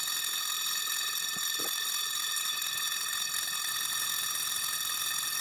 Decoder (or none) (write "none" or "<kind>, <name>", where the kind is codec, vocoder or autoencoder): none